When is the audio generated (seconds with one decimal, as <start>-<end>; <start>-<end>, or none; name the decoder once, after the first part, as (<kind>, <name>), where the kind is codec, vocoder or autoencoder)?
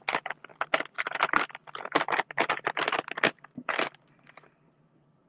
none